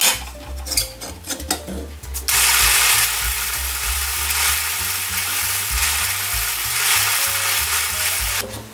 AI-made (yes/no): no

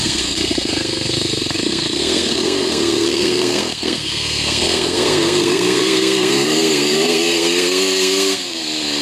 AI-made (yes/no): yes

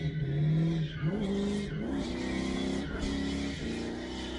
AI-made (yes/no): no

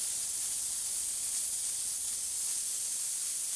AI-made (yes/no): no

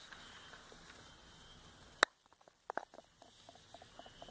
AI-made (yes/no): no